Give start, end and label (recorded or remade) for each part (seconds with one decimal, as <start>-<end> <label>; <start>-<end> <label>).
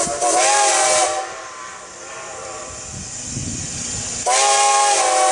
0.0-1.4 recorded; 1.4-2.8 remade; 2.8-3.4 recorded; 3.4-4.2 remade; 4.2-5.3 recorded